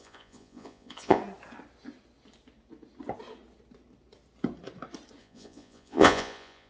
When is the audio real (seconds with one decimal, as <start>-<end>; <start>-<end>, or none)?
1.2-5.2